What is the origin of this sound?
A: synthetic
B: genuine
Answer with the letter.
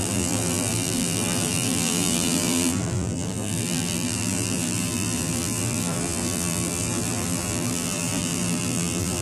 A